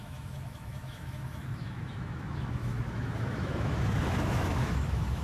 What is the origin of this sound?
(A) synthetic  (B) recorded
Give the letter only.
A